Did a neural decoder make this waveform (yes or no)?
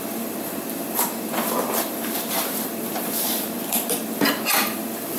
yes